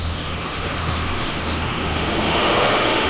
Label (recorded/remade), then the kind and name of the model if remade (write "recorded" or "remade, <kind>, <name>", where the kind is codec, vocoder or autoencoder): remade, autoencoder, DAC-VAE